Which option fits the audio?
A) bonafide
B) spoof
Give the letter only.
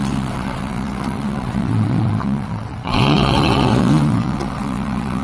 B